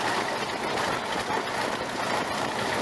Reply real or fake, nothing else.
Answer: real